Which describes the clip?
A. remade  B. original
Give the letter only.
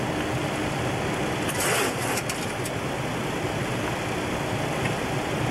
B